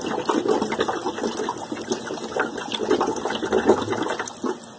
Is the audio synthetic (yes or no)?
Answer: no